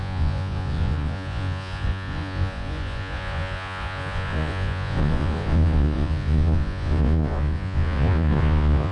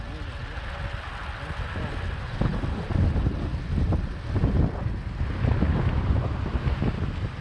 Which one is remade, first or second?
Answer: first